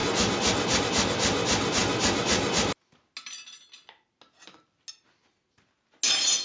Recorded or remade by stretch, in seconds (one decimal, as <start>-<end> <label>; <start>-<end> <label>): 0.0-6.4 recorded